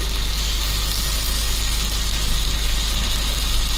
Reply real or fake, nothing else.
real